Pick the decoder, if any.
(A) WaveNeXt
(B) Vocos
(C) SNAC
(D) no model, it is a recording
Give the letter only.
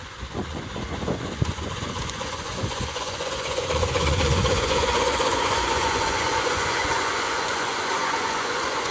B